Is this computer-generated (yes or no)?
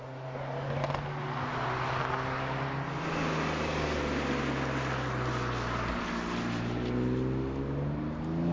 no